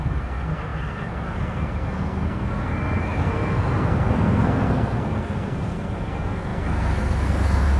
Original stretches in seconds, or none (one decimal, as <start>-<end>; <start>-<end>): none